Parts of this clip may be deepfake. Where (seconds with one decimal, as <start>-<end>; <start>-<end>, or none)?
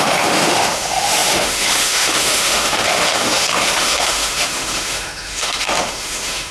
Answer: 0.0-6.5